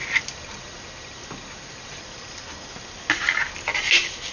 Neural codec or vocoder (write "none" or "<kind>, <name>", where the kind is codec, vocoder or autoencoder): none